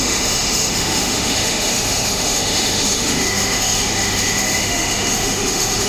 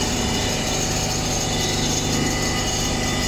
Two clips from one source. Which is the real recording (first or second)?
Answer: second